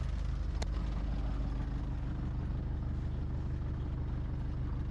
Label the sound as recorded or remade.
recorded